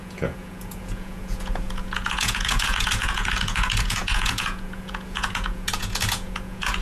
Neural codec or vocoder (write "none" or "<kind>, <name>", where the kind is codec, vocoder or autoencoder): vocoder, Vocos